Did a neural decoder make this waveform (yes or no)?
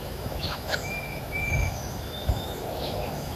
yes